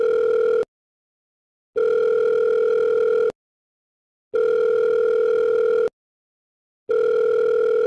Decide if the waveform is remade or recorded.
recorded